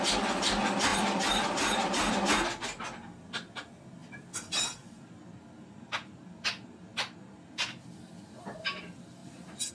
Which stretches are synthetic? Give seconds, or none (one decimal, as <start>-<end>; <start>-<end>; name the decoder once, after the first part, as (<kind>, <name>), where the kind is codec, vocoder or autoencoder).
0.9-2.1 (vocoder, BigVGAN v2); 4.0-8.4; 9.2-9.7